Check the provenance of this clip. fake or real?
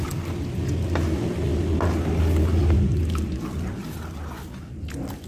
real